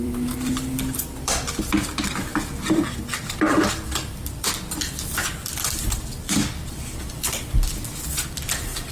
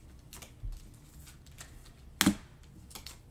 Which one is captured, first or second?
second